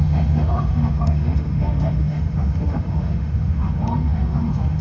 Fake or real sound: fake